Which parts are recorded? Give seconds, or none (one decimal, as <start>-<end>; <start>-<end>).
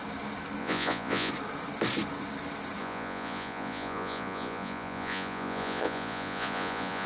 0.0-0.6; 1.3-2.8